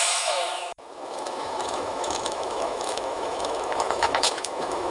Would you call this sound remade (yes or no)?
yes